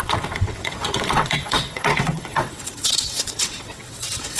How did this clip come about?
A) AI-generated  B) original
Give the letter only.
A